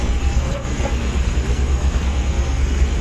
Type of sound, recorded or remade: remade